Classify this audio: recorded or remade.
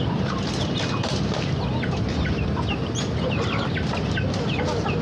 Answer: recorded